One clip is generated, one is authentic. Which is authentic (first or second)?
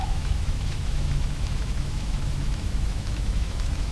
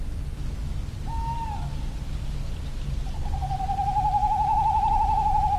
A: second